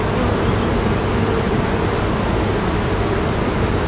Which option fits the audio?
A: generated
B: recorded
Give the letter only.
B